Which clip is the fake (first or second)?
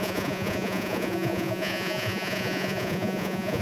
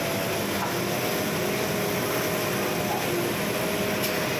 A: first